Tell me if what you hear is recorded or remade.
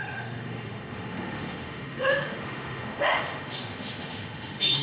remade